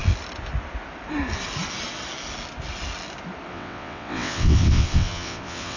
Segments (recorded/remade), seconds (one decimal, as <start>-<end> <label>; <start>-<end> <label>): 0.0-3.5 recorded; 3.5-5.8 remade